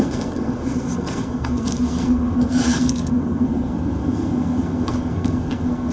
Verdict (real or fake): fake